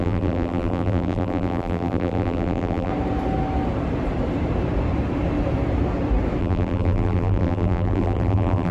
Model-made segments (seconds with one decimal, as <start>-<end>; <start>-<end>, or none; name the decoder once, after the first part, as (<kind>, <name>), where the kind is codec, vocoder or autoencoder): 0.0-2.9 (vocoder, BigVGAN v2); 6.4-8.7